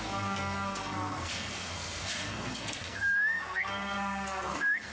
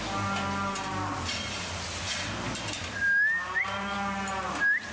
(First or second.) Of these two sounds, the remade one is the first